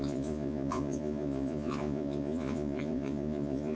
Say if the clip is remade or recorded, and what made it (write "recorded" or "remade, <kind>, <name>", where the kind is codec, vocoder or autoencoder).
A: remade, vocoder, Vocos